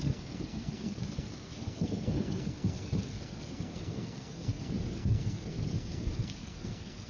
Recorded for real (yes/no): no